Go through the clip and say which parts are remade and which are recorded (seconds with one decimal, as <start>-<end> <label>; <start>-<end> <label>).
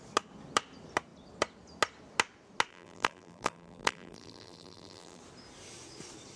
0.0-2.7 recorded; 2.7-5.2 remade; 5.2-6.4 recorded